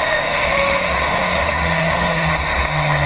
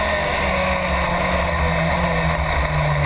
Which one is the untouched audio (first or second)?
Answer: second